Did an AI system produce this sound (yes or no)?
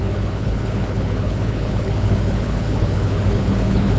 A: yes